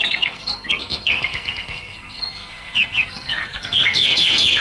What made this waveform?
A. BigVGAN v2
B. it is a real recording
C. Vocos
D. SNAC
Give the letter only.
D